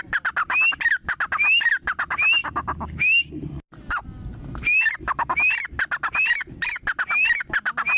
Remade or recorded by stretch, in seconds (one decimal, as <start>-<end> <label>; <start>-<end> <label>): 0.0-8.0 recorded